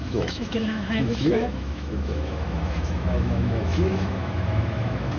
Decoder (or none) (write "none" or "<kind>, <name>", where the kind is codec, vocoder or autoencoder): autoencoder, DAC-VAE